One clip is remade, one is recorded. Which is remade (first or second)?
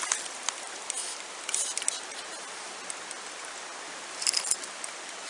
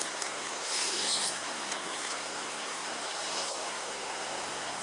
second